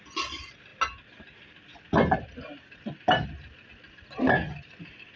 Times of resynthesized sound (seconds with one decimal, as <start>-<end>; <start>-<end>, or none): none